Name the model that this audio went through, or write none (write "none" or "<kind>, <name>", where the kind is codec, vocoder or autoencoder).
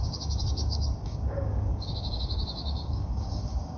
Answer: codec, DAC